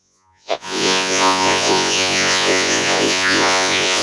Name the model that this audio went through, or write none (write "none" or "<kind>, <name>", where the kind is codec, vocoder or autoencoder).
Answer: vocoder, Vocos